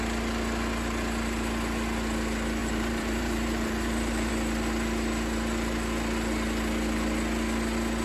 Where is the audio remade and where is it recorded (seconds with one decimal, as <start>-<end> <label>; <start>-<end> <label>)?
0.0-2.6 recorded; 2.6-4.3 remade; 4.3-8.0 recorded